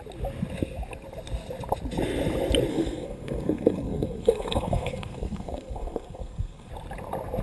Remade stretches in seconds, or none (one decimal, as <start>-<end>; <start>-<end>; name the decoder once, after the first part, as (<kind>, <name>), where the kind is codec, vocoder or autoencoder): 2.7-6.7 (codec, SNAC)

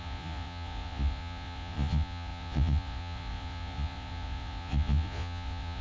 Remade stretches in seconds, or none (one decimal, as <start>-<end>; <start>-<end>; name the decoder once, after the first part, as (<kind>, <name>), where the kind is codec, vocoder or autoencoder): 0.0-5.8 (vocoder, Vocos)

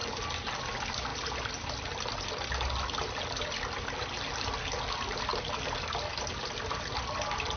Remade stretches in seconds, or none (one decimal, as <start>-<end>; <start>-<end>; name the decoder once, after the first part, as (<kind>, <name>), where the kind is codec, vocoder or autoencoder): none

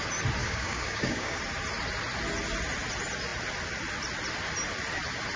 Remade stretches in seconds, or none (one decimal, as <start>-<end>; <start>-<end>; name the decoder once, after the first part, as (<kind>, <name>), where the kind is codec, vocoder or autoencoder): 0.4-1.4 (codec, DAC)

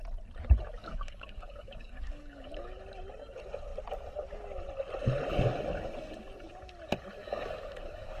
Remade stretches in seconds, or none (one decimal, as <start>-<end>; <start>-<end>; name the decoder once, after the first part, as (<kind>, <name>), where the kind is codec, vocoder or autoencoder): 0.8-2.8 (codec, DAC); 7.2-8.2

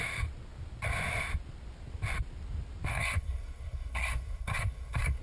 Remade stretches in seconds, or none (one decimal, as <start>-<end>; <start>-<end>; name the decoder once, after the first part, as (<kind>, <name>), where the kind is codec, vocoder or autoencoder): 2.9-5.2 (codec, SNAC)

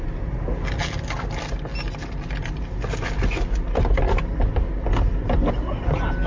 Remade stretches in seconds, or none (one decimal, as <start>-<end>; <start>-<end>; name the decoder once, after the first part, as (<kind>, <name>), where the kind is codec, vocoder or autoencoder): none